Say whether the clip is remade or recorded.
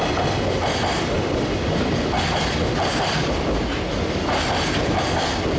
recorded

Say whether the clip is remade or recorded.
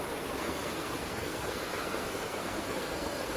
remade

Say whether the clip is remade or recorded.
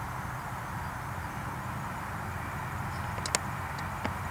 recorded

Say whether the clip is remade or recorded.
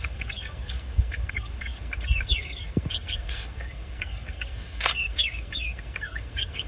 remade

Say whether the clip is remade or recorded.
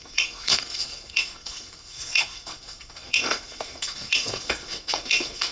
remade